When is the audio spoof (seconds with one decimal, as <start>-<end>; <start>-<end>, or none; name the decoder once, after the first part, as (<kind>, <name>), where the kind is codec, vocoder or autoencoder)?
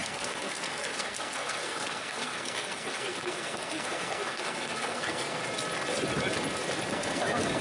0.0-5.4 (codec, SNAC); 6.9-7.6